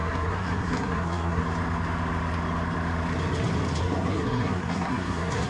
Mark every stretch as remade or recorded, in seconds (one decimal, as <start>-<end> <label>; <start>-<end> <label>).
0.0-1.4 remade; 1.4-3.8 recorded; 3.8-5.5 remade